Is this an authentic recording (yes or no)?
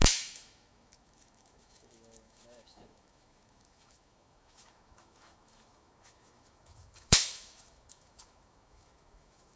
no